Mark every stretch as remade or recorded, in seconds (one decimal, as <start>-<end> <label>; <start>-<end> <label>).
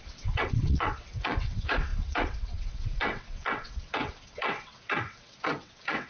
0.0-6.1 remade